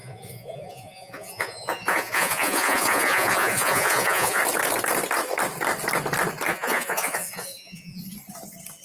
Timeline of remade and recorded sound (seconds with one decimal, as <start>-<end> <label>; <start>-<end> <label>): 0.0-4.4 remade; 4.4-6.5 recorded; 6.5-8.0 remade; 8.0-8.8 recorded